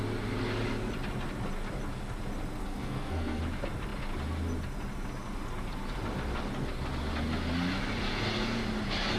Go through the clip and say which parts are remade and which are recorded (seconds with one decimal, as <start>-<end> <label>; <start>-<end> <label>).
0.0-2.6 recorded; 2.6-3.4 remade; 3.4-9.2 recorded